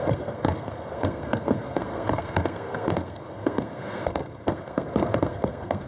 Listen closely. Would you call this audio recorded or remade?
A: remade